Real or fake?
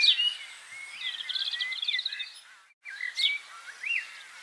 real